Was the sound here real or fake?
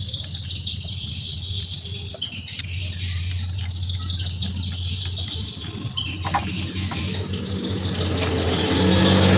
real